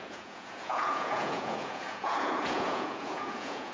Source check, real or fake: fake